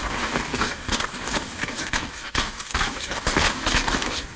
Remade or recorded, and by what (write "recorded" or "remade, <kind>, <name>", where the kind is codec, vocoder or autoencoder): remade, codec, DAC